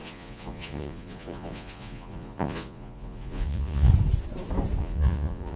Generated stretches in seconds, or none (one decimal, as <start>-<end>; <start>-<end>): 0.0-3.9; 4.8-5.6